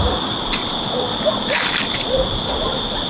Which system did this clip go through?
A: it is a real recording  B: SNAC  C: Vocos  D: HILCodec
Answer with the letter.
A